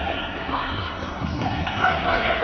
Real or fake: fake